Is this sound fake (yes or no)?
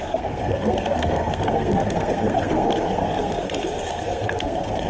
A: yes